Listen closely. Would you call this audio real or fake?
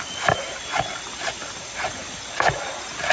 real